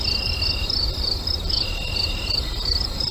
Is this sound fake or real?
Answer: real